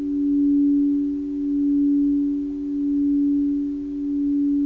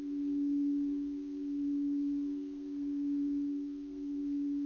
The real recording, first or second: first